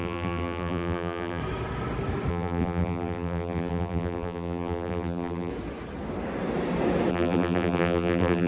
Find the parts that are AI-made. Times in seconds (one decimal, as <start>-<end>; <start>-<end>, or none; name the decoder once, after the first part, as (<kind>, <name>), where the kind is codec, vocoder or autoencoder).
0.0-1.4 (vocoder, BigVGAN v2); 2.3-5.5; 7.1-8.5